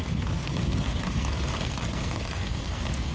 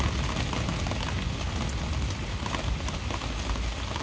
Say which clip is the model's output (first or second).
first